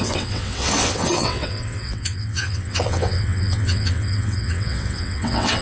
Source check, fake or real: fake